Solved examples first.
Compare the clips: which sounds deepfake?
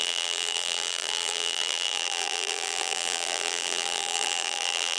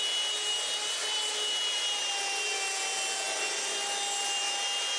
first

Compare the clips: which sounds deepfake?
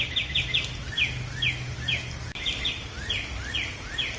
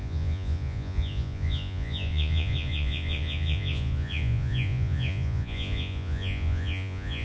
second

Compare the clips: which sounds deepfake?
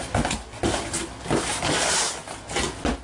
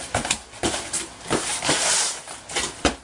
second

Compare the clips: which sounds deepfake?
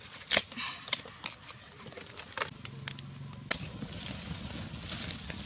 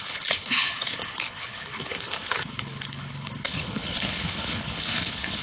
second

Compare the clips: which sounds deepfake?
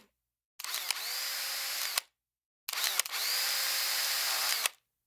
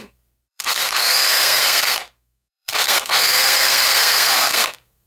second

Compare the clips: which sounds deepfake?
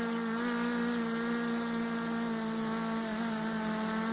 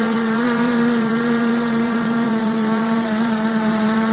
second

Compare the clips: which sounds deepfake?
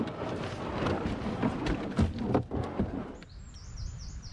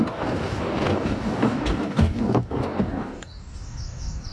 second